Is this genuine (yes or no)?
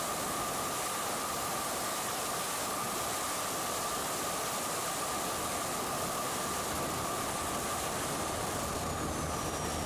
yes